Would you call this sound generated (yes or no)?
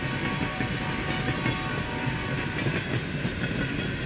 no